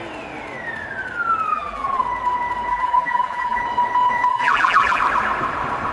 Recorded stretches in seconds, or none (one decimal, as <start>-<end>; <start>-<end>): 0.0-1.5; 2.0-2.7; 3.6-4.3; 5.0-5.9